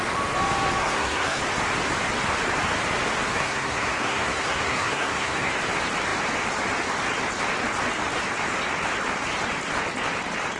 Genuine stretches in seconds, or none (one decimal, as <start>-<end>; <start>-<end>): 0.0-0.8; 1.4-3.3; 5.5-10.6